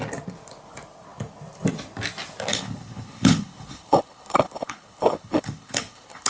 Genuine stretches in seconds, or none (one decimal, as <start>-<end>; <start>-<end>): 0.0-2.5